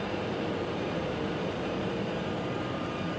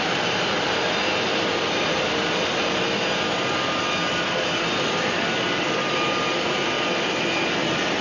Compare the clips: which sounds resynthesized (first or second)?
first